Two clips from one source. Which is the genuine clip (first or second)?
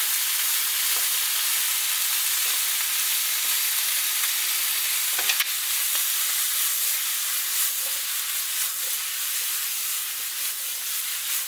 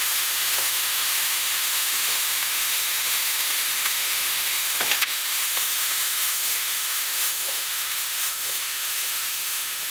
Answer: first